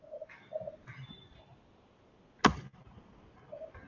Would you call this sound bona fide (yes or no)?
yes